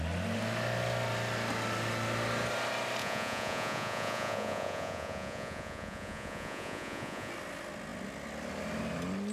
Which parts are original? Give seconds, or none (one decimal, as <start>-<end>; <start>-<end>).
0.0-3.0; 7.3-9.3